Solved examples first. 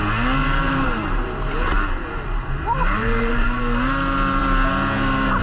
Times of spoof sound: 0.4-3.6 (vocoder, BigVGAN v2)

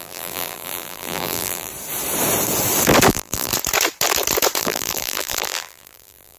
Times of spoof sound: 0.0-1.7 (vocoder, BigVGAN v2); 3.1-3.5; 4.6-6.4

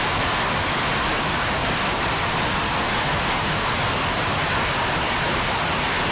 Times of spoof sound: 1.6-2.5 (vocoder, BigVGAN v2)

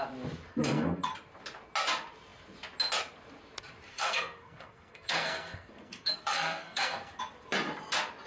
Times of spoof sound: 0.5-1.1 (codec, SNAC); 3.9-7.2

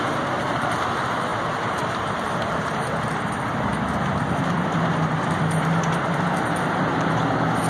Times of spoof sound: 1.3-3.0 (vocoder, BigVGAN v2)